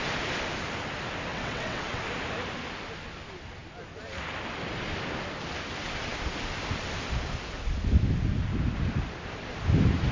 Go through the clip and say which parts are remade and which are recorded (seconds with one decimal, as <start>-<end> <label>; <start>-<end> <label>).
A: 0.0-1.3 recorded; 1.3-2.0 remade; 2.0-10.1 recorded